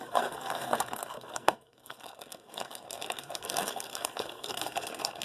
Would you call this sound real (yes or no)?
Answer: no